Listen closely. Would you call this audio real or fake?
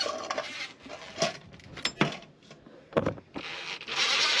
real